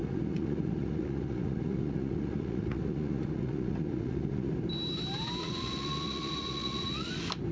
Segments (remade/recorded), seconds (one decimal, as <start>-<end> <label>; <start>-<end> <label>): 0.0-4.5 remade; 4.5-5.4 recorded; 5.4-7.1 remade; 7.1-7.5 recorded